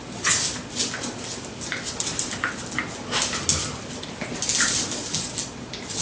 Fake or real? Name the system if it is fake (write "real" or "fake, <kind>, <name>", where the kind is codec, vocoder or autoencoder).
real